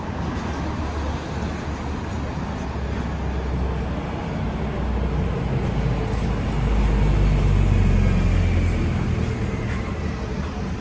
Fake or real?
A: real